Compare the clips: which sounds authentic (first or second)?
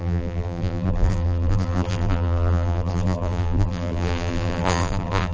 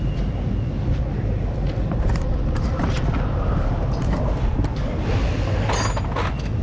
second